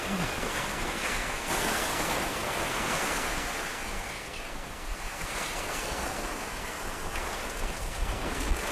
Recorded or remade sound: remade